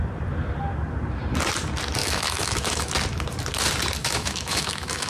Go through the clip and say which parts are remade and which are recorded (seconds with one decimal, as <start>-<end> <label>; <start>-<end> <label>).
0.0-2.0 recorded; 2.0-2.9 remade; 2.9-4.0 recorded; 4.0-5.1 remade